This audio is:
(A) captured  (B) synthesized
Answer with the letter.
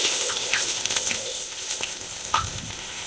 B